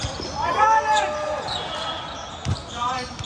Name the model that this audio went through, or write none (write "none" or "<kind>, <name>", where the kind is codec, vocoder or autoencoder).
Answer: none